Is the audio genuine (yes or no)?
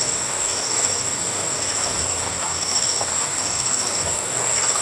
no